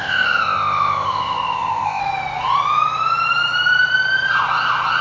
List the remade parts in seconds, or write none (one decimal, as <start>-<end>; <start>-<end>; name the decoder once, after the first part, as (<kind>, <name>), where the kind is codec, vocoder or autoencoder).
0.0-2.0 (codec, ZipCodec)